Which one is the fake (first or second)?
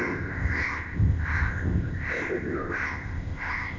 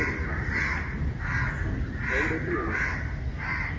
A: first